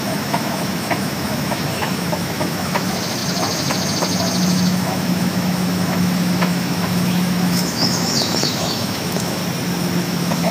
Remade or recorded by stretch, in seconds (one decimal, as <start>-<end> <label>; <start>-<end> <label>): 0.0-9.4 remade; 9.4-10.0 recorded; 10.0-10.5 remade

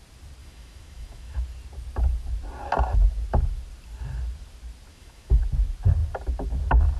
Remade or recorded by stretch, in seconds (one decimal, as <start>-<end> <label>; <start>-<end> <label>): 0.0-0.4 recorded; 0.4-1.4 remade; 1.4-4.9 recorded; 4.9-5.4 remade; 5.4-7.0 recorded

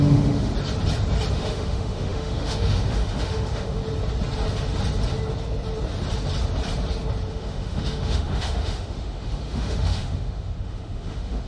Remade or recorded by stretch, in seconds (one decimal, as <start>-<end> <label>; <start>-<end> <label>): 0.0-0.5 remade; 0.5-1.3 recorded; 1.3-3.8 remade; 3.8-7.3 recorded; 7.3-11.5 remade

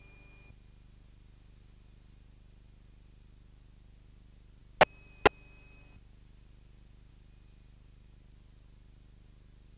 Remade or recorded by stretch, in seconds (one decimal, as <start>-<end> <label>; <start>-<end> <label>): 0.0-9.8 recorded